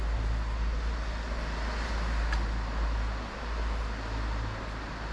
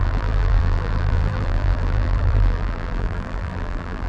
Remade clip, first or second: second